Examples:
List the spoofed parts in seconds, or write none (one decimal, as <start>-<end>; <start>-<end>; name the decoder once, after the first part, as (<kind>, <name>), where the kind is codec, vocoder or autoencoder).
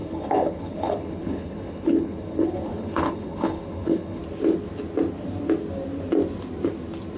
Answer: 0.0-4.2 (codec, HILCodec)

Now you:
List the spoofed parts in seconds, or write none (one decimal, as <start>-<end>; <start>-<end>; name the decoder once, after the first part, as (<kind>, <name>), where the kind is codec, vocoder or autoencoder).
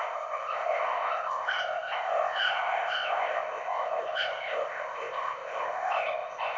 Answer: 0.0-6.6 (codec, ZipCodec)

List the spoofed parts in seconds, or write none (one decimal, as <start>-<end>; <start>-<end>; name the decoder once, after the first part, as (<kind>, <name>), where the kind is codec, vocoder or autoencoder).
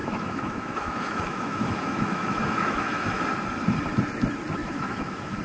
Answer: 0.0-3.2 (autoencoder, DAC-VAE); 4.6-5.4